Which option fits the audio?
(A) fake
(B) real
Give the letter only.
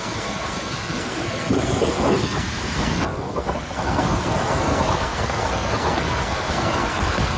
A